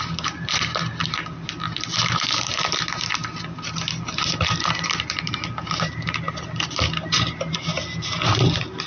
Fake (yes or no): no